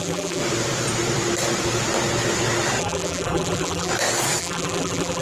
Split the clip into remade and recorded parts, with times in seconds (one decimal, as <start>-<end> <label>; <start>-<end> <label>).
0.0-0.4 remade; 0.4-2.8 recorded; 2.8-3.9 remade; 3.9-4.4 recorded; 4.4-5.2 remade